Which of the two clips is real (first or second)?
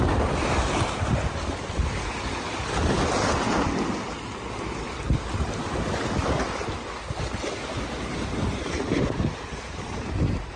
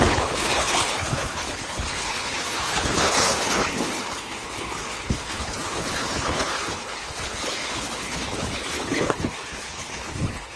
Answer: first